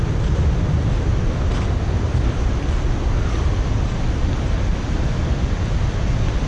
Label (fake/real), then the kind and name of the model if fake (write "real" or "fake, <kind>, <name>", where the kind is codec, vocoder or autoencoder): real